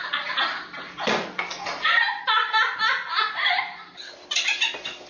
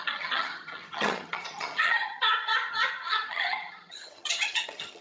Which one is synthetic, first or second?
second